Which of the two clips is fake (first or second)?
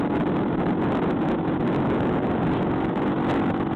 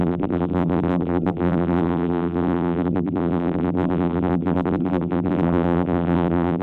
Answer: second